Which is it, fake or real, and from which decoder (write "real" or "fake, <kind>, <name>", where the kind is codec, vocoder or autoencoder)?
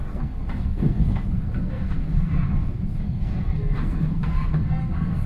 fake, codec, SNAC